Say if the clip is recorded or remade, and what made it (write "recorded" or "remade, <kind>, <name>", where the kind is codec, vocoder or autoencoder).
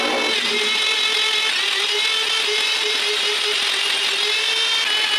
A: recorded